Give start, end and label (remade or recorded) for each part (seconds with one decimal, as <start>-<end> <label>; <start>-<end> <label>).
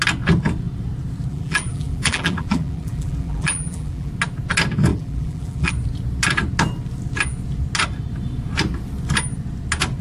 0.0-1.3 recorded; 1.3-4.1 remade; 4.1-4.9 recorded; 4.9-5.7 remade; 5.7-10.0 recorded